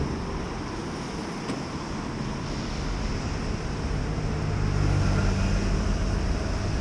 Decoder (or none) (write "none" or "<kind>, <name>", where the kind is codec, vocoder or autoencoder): none